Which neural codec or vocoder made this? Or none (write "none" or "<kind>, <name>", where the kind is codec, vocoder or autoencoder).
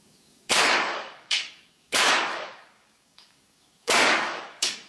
codec, DAC